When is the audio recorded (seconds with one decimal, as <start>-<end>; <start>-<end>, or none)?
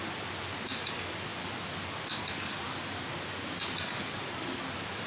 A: 0.0-5.1